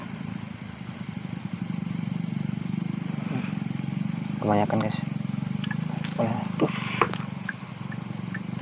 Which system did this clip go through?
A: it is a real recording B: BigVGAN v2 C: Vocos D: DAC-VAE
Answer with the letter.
A